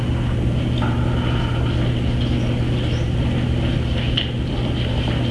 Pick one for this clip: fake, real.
real